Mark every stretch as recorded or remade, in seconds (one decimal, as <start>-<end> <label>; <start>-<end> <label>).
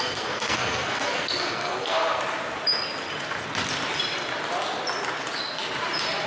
0.0-2.2 remade; 2.2-6.3 recorded